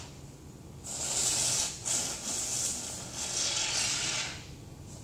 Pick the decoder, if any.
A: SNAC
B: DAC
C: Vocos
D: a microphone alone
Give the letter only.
D